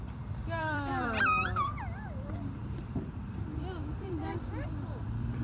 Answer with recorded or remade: remade